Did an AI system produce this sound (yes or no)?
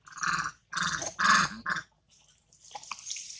no